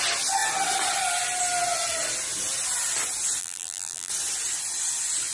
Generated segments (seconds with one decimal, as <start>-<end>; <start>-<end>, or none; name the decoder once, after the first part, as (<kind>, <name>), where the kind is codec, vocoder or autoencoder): 3.4-4.1 (vocoder, BigVGAN v2)